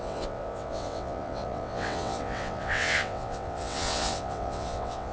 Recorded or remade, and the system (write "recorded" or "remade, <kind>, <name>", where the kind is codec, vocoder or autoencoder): remade, vocoder, WaveNeXt